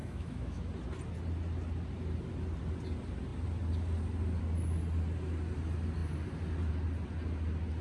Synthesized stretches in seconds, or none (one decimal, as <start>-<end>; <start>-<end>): 0.0-0.7